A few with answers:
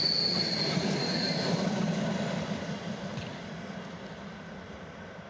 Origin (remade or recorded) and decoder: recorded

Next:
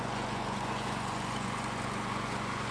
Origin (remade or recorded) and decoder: remade, vocoder, Vocos